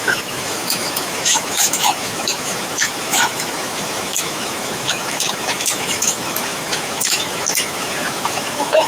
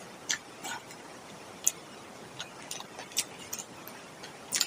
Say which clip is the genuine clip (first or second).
second